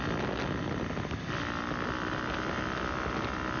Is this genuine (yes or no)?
yes